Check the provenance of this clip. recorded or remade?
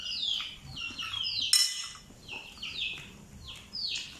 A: recorded